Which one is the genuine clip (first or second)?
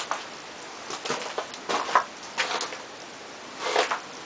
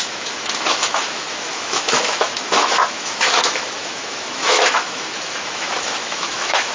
first